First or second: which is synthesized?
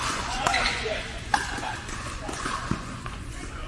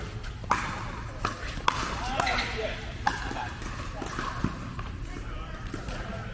first